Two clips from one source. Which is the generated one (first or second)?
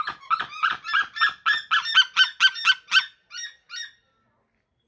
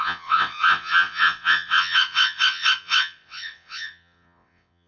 second